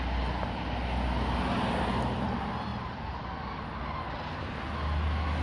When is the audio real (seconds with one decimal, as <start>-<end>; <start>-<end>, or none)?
0.0-5.4